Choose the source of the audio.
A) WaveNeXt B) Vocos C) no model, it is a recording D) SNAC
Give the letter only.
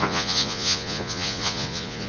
B